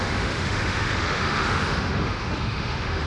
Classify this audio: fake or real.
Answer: fake